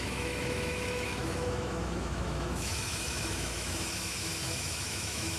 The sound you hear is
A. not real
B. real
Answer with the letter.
A